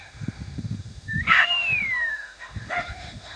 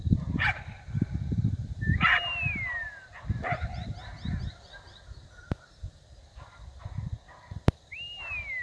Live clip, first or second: second